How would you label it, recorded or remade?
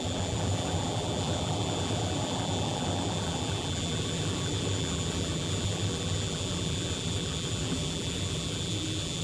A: remade